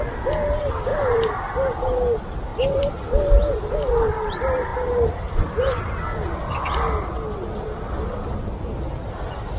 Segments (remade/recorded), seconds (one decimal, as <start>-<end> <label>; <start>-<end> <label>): 0.0-9.6 recorded

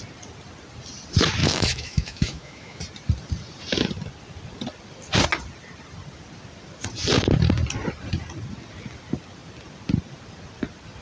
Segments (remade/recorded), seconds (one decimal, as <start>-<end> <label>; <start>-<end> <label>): 0.0-1.4 recorded; 1.4-2.8 remade; 2.8-11.0 recorded

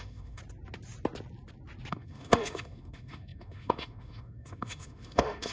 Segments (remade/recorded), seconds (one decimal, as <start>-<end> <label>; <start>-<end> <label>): 0.0-0.4 remade; 0.4-1.9 recorded; 1.9-5.5 remade

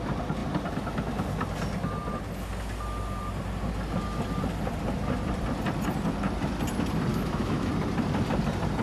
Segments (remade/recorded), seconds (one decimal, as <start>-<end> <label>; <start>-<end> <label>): 0.0-7.1 recorded; 7.1-7.7 remade; 7.7-8.8 recorded

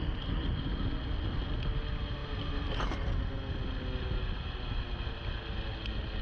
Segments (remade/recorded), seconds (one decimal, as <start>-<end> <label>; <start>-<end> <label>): 0.0-6.2 recorded

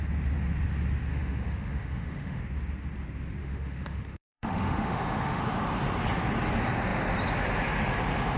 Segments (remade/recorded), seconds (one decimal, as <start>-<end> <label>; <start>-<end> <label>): 0.0-1.1 recorded; 1.1-2.4 remade; 2.4-3.4 recorded; 3.4-5.4 remade; 5.4-8.4 recorded

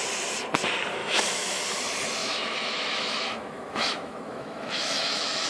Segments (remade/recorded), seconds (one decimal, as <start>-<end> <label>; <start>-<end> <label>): 0.0-1.0 recorded; 1.0-1.6 remade; 1.6-2.2 recorded; 2.2-5.5 remade

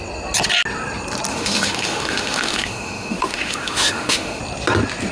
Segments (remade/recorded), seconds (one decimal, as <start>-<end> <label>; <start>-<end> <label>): 0.0-1.3 recorded; 1.3-4.4 remade; 4.4-5.1 recorded